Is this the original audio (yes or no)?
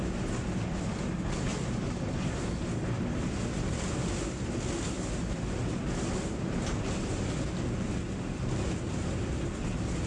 yes